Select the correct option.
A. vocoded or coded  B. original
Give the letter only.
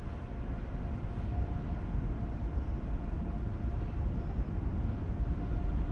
B